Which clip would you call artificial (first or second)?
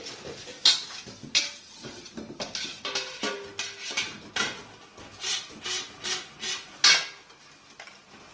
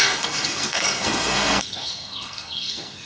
second